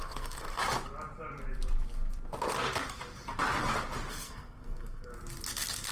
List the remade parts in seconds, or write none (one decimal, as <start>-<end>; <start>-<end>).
0.0-0.6; 4.1-5.1